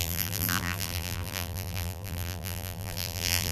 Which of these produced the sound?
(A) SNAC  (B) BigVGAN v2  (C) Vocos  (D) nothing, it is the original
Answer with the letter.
B